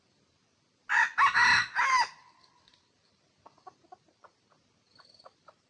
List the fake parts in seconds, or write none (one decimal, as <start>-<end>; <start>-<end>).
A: 0.0-0.9; 2.7-5.7